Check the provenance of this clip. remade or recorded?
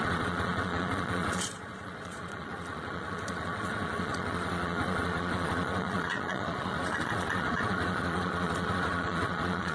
remade